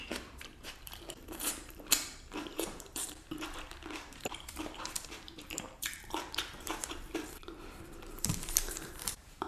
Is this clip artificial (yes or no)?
yes